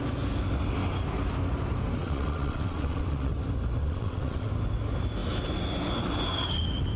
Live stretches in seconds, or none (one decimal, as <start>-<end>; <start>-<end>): 0.0-2.0; 3.3-3.8; 4.5-7.0

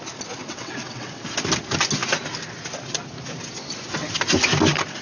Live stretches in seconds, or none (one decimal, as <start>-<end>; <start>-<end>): 0.0-0.4; 1.2-5.0

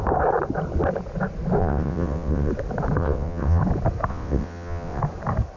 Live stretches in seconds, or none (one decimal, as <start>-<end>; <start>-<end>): 0.0-1.6; 2.5-3.0; 3.6-4.1; 5.0-5.6

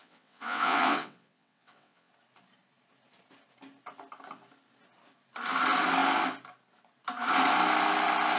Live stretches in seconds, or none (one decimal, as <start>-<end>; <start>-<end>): 2.1-8.4

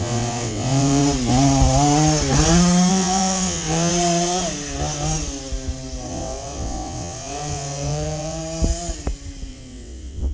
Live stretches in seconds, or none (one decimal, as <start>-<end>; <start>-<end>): 1.0-2.9; 3.9-6.1; 8.4-9.5